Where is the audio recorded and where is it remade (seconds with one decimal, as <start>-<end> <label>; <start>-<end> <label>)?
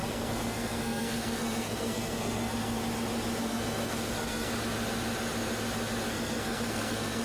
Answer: 0.0-2.8 remade; 2.8-3.4 recorded; 3.4-4.5 remade; 4.5-6.1 recorded; 6.1-7.2 remade